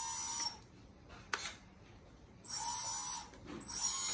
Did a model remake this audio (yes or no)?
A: no